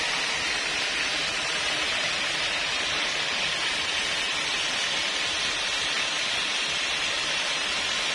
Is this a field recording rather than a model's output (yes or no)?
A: yes